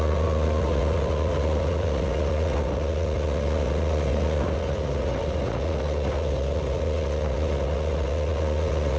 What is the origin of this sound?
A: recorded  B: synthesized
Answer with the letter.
B